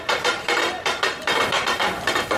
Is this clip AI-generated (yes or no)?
yes